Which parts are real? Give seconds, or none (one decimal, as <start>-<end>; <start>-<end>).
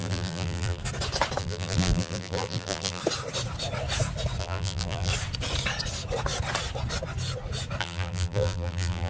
0.8-1.4; 3.0-4.4; 5.1-7.8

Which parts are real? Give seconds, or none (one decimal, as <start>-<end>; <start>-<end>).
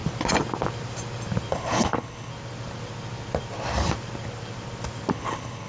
0.0-1.5; 2.3-5.1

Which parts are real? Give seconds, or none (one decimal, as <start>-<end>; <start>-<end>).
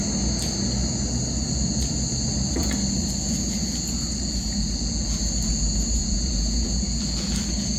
0.0-6.0; 6.8-7.8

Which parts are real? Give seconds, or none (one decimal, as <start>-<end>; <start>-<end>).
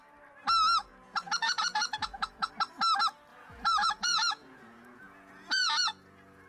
0.0-0.8; 2.5-3.3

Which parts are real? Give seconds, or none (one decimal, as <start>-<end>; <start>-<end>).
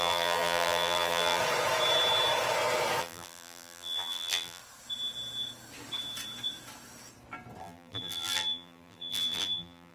1.4-3.0; 4.6-7.6